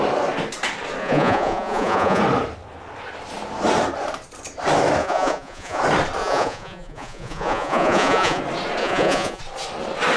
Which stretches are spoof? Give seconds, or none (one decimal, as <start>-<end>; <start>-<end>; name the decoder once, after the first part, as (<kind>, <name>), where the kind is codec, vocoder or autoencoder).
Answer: 1.0-2.2 (vocoder, Vocos); 5.0-5.8; 6.2-8.4; 8.8-9.4